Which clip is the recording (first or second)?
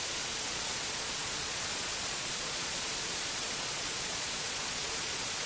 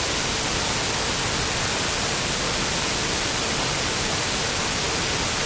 second